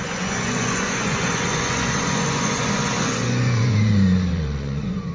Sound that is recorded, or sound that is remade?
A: remade